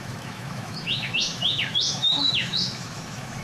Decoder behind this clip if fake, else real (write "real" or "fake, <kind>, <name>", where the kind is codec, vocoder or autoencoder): fake, autoencoder, DAC-VAE